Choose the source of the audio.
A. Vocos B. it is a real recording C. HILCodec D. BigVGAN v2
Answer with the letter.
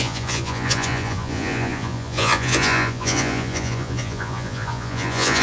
A